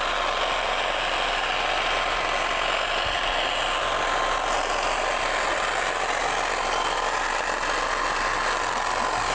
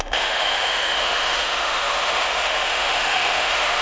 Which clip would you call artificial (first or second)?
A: second